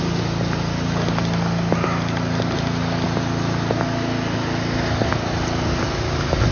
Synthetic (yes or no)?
no